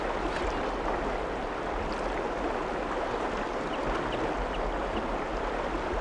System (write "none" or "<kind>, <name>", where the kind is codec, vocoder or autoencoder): none